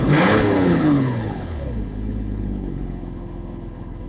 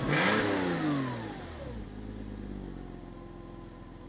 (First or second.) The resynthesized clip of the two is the first